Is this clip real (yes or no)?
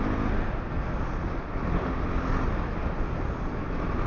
yes